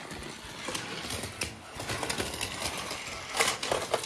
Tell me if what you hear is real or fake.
real